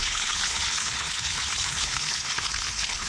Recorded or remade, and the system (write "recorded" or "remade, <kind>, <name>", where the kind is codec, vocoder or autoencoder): remade, codec, HILCodec